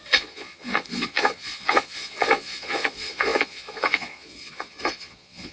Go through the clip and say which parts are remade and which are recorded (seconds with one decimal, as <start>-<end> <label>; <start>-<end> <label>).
0.0-5.5 remade